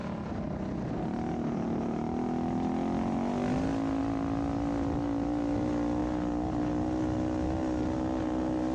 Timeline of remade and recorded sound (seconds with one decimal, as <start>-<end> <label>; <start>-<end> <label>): 0.0-8.7 recorded